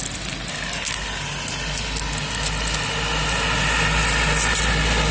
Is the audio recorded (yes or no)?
yes